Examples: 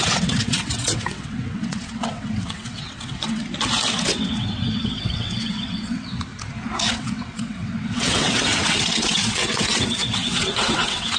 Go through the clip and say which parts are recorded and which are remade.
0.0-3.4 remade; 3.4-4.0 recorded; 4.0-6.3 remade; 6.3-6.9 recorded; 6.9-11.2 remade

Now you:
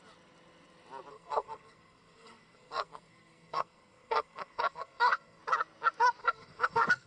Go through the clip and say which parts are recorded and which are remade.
0.0-1.1 recorded; 1.1-5.4 remade; 5.4-6.2 recorded; 6.2-7.1 remade

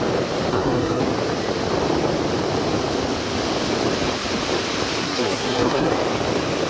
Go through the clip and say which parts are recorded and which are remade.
0.0-0.5 recorded; 0.5-1.0 remade; 1.0-5.0 recorded; 5.0-5.9 remade; 5.9-6.7 recorded

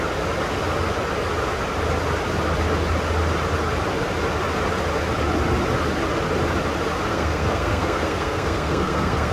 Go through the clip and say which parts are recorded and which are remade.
0.0-7.1 recorded; 7.1-9.3 remade

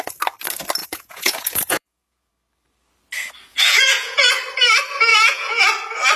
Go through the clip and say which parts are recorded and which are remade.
0.0-0.8 recorded; 0.8-2.3 remade; 2.3-3.5 recorded; 3.5-4.3 remade; 4.3-5.1 recorded; 5.1-5.6 remade; 5.6-6.2 recorded

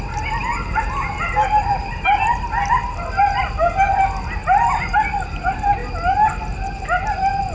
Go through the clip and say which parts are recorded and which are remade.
0.0-7.5 recorded

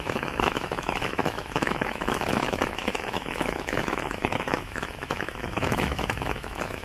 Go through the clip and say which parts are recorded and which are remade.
0.0-6.8 remade

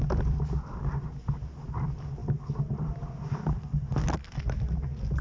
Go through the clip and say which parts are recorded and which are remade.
0.0-5.2 recorded